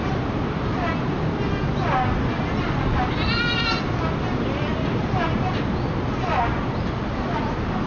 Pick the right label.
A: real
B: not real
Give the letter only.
A